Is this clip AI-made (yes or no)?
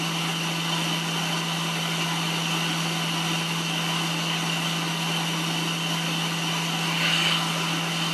no